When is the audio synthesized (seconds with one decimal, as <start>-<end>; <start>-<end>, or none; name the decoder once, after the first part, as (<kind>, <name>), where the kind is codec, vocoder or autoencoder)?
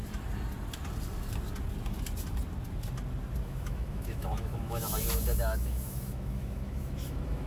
3.4-7.5 (autoencoder, DAC-VAE)